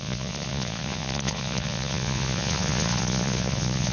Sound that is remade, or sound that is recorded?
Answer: remade